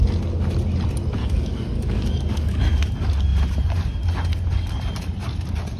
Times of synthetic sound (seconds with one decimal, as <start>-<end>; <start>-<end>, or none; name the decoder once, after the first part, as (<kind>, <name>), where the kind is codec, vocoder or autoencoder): 1.2-2.6 (codec, DAC)